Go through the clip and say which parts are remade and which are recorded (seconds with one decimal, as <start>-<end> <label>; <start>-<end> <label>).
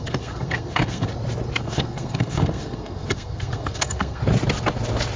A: 0.0-1.1 remade; 1.1-1.6 recorded; 1.6-4.2 remade; 4.2-5.2 recorded